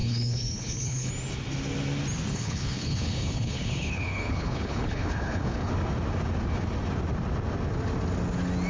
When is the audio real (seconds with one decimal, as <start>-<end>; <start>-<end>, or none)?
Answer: 1.1-2.3; 5.7-8.7